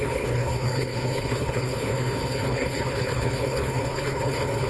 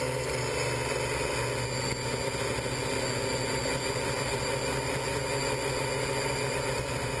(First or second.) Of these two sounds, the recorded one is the second